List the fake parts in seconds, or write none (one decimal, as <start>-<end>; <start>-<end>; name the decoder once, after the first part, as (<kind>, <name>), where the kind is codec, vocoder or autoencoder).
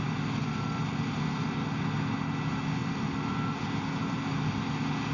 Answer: none